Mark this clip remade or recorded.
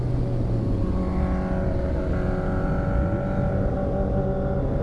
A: recorded